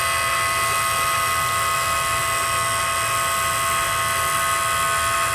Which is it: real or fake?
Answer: real